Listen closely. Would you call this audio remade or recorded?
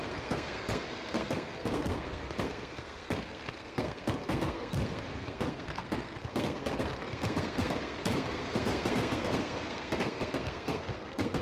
remade